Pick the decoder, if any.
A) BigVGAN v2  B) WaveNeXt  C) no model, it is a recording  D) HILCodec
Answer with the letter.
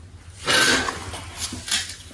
C